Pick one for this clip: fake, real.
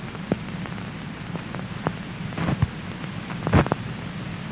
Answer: fake